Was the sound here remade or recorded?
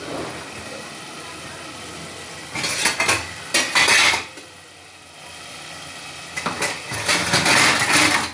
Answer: recorded